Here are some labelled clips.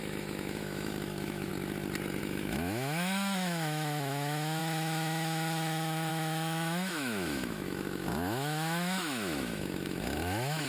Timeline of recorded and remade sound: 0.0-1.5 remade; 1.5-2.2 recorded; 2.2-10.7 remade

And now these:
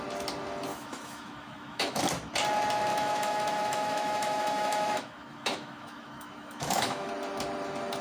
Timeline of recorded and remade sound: 0.0-0.7 recorded; 0.7-2.0 remade; 2.0-2.9 recorded; 2.9-7.1 remade; 7.1-8.0 recorded

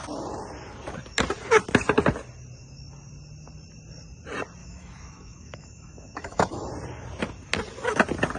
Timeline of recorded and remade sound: 0.0-4.6 recorded; 4.6-6.7 remade; 6.7-8.4 recorded

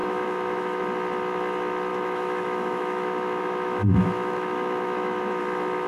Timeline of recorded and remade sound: 0.0-0.8 remade; 0.8-1.9 recorded; 1.9-5.4 remade; 5.4-5.9 recorded

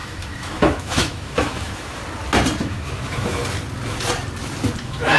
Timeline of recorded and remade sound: 0.0-2.0 remade; 2.0-2.6 recorded; 2.6-3.4 remade; 3.4-4.8 recorded; 4.8-5.2 remade